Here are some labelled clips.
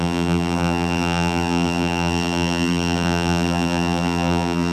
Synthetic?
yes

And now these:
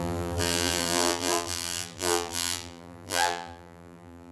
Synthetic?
yes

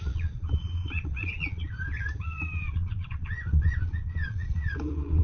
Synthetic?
yes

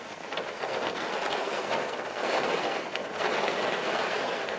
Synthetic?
yes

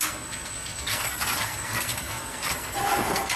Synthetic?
yes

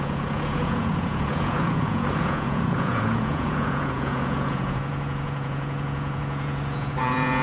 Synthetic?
yes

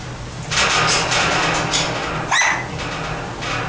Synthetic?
no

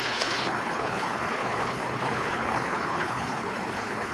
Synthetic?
yes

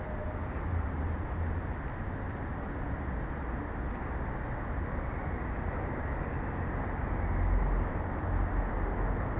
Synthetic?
no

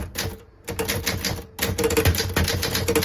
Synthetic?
no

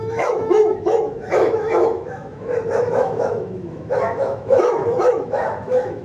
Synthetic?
yes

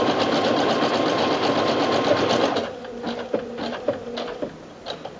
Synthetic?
no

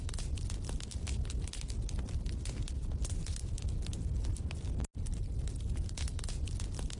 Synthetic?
no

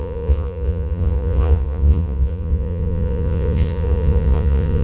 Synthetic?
yes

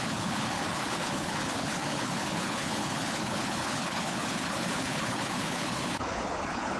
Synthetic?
yes